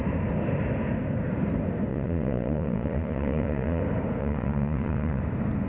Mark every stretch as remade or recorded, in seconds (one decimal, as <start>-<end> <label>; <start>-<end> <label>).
0.0-1.9 recorded; 1.9-3.8 remade; 3.8-4.2 recorded; 4.2-5.2 remade; 5.2-5.7 recorded